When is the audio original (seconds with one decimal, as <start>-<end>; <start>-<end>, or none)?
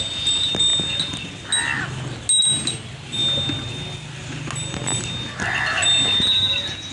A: 0.0-6.9